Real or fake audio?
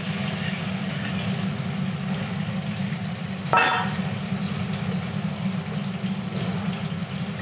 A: real